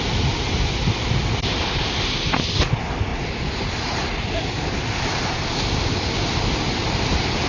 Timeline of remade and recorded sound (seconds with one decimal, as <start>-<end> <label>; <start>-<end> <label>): 0.0-7.5 recorded